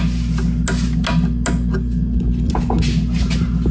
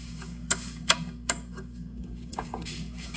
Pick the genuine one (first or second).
first